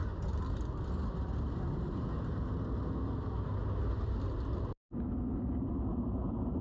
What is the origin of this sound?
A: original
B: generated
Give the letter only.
B